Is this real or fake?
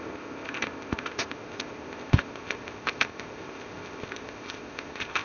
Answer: fake